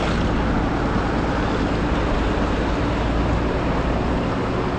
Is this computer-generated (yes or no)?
no